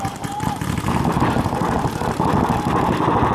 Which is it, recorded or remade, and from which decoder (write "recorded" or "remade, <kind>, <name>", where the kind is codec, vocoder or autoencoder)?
recorded